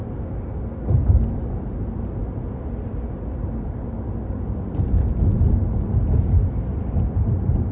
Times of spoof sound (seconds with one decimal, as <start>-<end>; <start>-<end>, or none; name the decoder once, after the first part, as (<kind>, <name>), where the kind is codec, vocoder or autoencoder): none